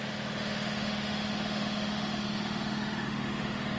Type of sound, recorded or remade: remade